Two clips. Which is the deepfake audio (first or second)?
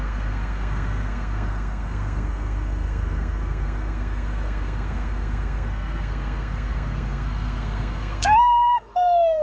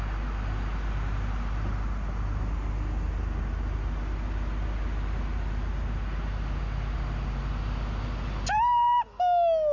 first